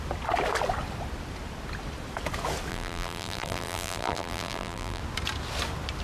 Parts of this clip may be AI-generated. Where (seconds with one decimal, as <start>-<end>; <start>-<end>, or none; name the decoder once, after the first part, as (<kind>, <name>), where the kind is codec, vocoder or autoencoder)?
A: 2.7-5.0 (vocoder, BigVGAN v2)